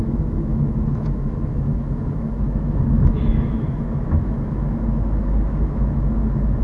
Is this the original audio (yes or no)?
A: no